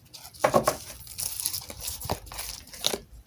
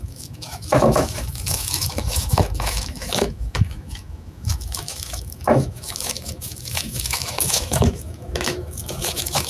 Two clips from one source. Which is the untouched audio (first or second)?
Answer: first